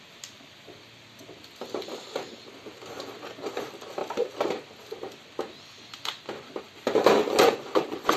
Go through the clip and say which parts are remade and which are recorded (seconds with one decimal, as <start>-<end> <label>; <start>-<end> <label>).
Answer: 0.0-7.2 recorded; 7.2-8.2 remade

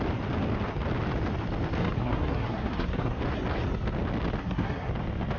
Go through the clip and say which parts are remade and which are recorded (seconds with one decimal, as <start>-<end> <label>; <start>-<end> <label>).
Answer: 0.0-1.8 recorded; 1.8-3.2 remade; 3.2-4.4 recorded; 4.4-4.9 remade; 4.9-5.4 recorded

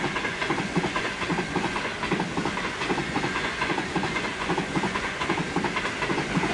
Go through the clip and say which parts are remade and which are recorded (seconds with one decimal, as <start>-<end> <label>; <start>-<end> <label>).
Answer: 0.0-1.9 remade; 1.9-2.6 recorded; 2.6-5.4 remade; 5.4-6.1 recorded; 6.1-6.5 remade